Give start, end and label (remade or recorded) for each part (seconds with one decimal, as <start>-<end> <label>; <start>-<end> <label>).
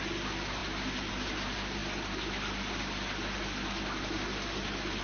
0.0-5.0 recorded